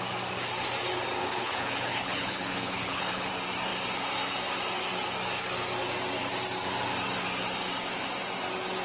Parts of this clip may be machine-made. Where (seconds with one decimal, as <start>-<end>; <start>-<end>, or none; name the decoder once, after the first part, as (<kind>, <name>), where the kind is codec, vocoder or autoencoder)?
1.2-3.3 (codec, HILCodec)